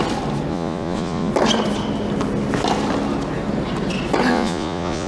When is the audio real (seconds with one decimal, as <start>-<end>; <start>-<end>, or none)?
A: 0.0-0.5; 1.3-4.3